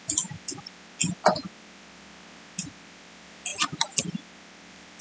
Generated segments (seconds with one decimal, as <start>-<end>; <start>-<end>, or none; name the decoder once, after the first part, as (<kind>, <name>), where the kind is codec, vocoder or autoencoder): none